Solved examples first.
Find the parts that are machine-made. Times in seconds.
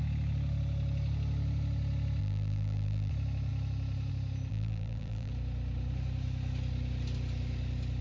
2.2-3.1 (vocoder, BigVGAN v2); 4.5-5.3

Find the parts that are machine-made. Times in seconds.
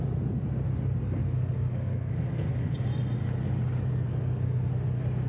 1.0-2.5 (codec, SNAC); 4.1-4.7